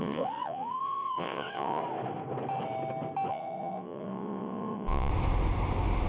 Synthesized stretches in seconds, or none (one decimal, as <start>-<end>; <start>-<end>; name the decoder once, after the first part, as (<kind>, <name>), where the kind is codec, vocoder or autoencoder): 0.0-1.8 (vocoder, WaveNeXt); 3.3-5.1